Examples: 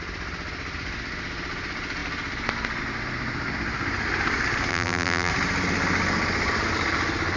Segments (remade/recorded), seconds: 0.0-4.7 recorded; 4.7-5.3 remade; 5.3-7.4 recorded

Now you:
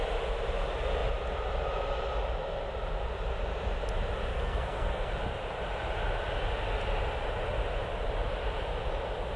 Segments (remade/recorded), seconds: 0.0-4.3 recorded; 4.3-5.1 remade; 5.1-9.4 recorded

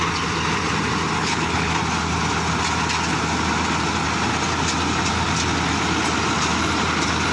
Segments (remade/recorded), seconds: 0.0-1.2 recorded; 1.2-1.7 remade; 1.7-7.3 recorded

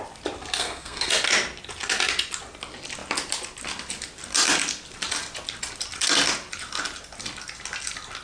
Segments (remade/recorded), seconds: 0.0-0.6 recorded; 0.6-1.1 remade; 1.1-8.2 recorded

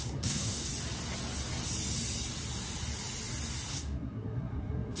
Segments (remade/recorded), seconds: 0.0-0.7 remade; 0.7-3.7 recorded; 3.7-5.0 remade

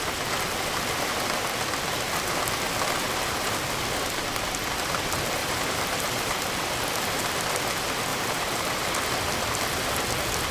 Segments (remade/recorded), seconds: 0.0-5.4 recorded; 5.4-6.3 remade; 6.3-8.1 recorded; 8.1-8.9 remade; 8.9-10.5 recorded

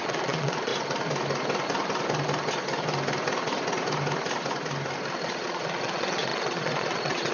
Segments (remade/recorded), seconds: 0.0-0.7 remade; 0.7-5.1 recorded; 5.1-7.3 remade

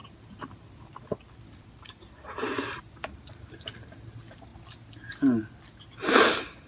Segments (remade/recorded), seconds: 0.0-4.0 remade; 4.0-6.7 recorded